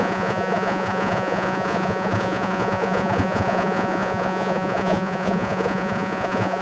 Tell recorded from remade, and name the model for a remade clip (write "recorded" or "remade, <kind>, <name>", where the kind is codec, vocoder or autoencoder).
remade, vocoder, Vocos